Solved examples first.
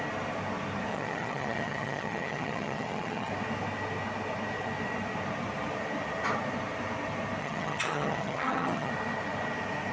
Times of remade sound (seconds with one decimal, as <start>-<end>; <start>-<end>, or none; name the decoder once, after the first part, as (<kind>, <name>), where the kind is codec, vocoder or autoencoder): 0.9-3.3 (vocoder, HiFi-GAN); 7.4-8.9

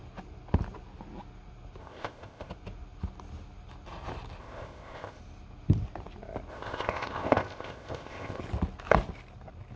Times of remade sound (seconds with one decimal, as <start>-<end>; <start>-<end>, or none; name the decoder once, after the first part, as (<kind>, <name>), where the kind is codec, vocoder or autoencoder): 1.8-2.5 (codec, ZipCodec); 4.4-5.2; 6.5-8.4

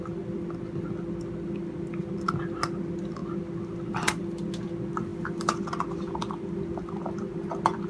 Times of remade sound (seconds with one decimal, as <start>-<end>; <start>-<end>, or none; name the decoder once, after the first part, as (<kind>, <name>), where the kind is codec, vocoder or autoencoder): none

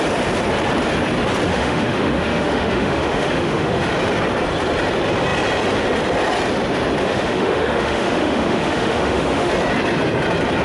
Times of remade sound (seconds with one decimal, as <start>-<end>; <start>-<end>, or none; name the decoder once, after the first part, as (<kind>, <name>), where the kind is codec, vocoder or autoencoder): 1.5-3.9 (autoencoder, DAC-VAE); 7.0-9.5

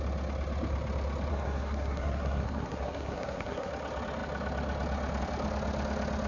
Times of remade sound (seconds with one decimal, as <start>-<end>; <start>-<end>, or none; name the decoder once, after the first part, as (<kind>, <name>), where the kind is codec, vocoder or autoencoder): 1.3-3.7 (codec, SNAC)

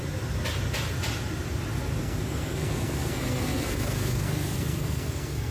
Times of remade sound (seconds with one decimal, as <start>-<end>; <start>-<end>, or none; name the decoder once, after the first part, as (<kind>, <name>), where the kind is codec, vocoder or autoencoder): 2.0-5.5 (codec, SNAC)

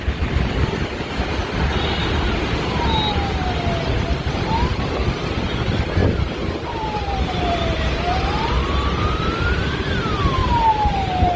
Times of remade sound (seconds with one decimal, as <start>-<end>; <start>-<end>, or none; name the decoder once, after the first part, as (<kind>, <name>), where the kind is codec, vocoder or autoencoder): 2.0-3.3 (vocoder, BigVGAN v2); 6.0-9.0; 10.4-11.4

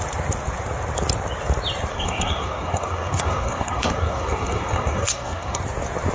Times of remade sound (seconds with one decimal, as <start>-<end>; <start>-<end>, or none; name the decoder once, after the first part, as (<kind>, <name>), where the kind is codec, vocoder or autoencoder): 1.9-5.6 (codec, SNAC)